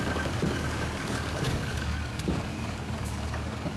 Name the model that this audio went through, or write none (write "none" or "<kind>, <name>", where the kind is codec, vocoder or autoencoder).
codec, DAC